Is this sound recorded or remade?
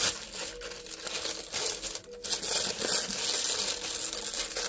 recorded